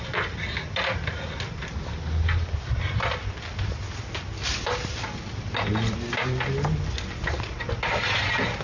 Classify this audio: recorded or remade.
recorded